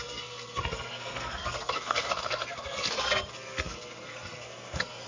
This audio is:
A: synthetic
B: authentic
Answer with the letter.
A